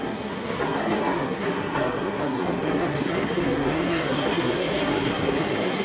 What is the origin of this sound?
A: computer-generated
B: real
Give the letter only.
A